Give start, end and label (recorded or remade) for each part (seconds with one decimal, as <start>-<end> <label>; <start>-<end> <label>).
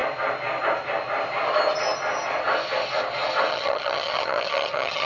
0.0-3.5 recorded; 3.5-5.1 remade